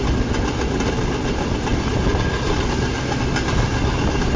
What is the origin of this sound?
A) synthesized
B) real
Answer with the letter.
B